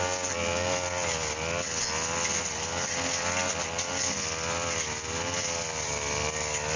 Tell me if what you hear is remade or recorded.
recorded